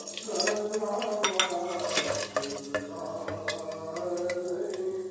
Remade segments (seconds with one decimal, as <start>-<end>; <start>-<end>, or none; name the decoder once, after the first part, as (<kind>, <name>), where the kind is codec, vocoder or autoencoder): none